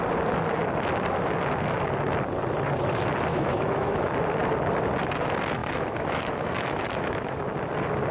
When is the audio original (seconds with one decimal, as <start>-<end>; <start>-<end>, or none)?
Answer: 0.0-3.3; 4.0-5.6; 7.4-8.1